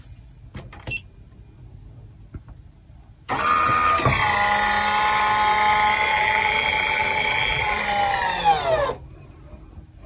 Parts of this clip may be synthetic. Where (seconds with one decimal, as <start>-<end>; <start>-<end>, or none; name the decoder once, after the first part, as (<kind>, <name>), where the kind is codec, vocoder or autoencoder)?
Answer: 6.1-7.8 (vocoder, BigVGAN v2)